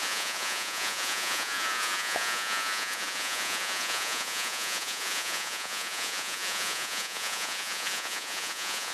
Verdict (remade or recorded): remade